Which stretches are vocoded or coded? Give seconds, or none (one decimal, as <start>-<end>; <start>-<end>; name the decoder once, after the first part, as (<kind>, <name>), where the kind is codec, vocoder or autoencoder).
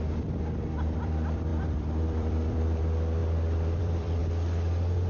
0.0-3.2 (vocoder, BigVGAN v2); 3.8-4.2